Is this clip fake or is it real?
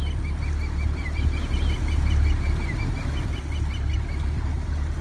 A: real